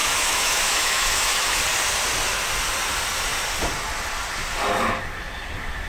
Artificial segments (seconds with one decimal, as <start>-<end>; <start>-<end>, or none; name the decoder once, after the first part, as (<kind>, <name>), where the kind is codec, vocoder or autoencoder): 0.0-1.6 (autoencoder, DAC-VAE)